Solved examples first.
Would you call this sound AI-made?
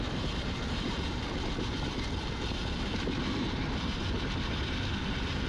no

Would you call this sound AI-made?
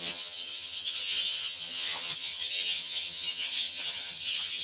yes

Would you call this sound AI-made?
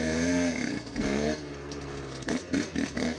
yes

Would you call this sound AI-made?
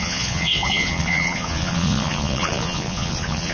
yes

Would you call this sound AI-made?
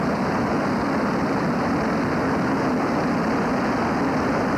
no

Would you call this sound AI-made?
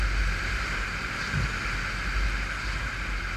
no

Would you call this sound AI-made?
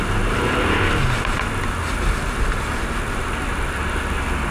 no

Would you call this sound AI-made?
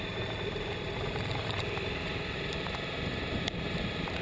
yes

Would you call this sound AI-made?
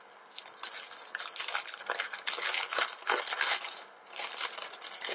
no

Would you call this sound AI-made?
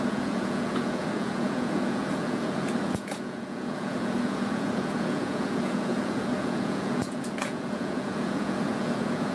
yes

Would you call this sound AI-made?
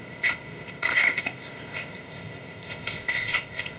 yes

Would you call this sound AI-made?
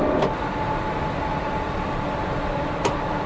no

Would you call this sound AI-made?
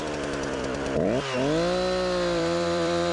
yes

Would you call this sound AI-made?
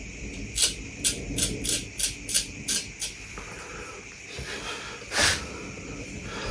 no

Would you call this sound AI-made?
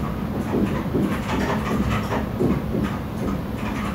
yes